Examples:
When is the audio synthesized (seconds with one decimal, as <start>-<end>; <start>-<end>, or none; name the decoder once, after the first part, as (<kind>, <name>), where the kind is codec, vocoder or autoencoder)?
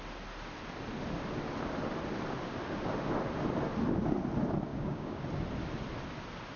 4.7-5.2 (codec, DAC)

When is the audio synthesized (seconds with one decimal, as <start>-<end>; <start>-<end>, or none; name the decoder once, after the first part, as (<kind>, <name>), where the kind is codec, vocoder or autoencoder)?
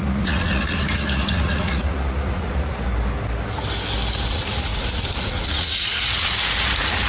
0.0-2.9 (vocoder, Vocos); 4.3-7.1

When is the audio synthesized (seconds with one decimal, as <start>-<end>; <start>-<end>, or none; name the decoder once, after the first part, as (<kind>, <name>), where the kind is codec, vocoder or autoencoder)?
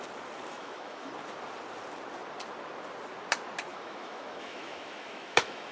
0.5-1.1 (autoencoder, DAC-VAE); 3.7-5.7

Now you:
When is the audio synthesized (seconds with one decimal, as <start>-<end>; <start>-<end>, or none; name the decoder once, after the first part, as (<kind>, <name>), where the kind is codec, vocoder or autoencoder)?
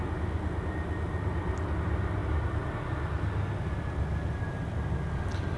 none